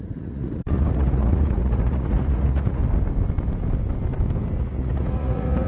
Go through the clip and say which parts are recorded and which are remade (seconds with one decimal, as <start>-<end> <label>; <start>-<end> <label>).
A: 0.0-2.8 remade; 2.8-4.6 recorded; 4.6-5.7 remade